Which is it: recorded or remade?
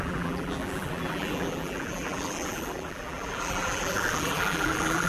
remade